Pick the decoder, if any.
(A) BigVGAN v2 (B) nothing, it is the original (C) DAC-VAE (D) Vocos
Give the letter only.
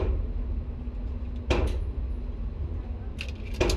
B